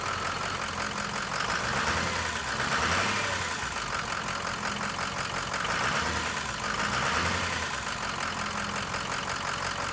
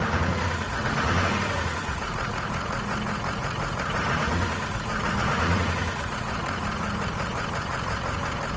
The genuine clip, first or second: first